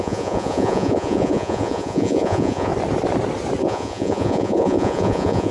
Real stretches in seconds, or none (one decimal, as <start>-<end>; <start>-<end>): 2.7-3.6